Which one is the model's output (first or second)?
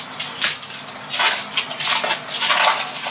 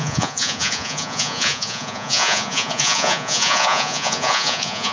second